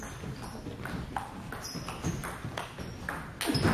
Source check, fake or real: real